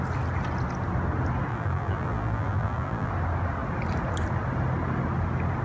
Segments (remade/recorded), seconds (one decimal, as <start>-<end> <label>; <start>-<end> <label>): 0.0-1.5 recorded; 1.5-3.1 remade; 3.1-5.6 recorded